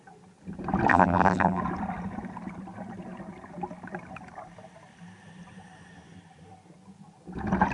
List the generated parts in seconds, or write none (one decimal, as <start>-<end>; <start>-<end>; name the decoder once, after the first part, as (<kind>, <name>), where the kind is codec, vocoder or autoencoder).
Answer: 0.9-1.6 (vocoder, BigVGAN v2)